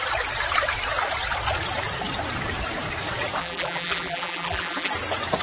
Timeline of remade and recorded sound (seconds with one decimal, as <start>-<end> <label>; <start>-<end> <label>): 0.0-3.4 recorded; 3.4-4.9 remade; 4.9-5.4 recorded